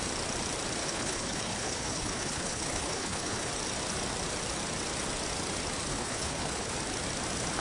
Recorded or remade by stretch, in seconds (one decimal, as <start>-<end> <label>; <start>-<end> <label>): 0.0-0.8 recorded; 0.8-3.5 remade; 3.5-5.9 recorded; 5.9-6.7 remade; 6.7-7.6 recorded